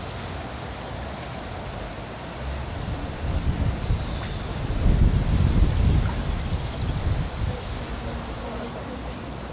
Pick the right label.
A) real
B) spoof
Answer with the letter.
A